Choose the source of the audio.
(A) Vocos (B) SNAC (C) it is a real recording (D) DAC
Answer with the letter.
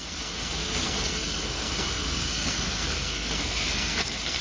B